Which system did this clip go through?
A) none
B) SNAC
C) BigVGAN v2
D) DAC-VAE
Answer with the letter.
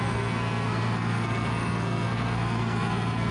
B